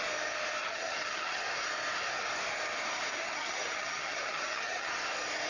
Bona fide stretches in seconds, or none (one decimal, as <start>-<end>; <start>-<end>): 0.0-0.6; 1.4-3.1; 4.9-5.5